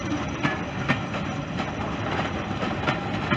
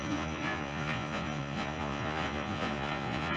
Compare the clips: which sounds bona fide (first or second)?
first